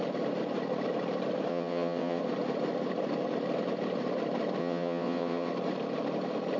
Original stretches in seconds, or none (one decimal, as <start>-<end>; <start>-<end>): 0.0-1.5; 2.2-4.6; 5.5-6.6